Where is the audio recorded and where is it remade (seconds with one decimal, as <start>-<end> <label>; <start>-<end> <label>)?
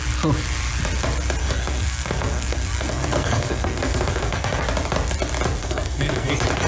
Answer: 0.0-1.4 recorded; 1.4-4.6 remade; 4.6-5.6 recorded; 5.6-6.3 remade; 6.3-6.7 recorded